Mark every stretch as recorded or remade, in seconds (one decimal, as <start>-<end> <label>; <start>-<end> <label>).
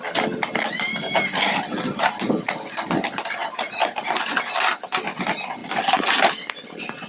0.0-7.1 recorded